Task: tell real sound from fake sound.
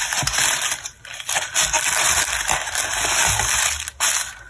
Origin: real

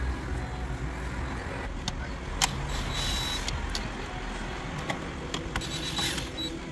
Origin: real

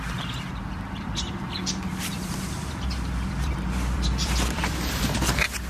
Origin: fake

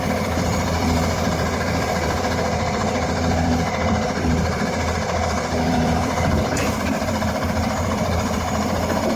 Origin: fake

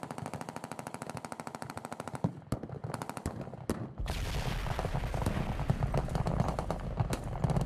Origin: real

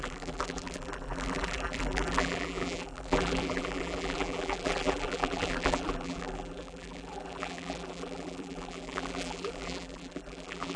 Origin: fake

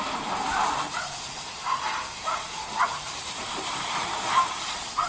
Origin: fake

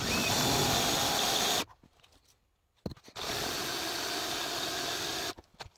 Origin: real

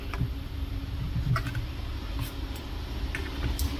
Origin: real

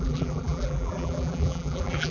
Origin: fake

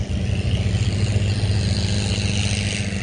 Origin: real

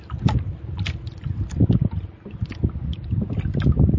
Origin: real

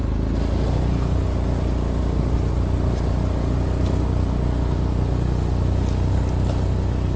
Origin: real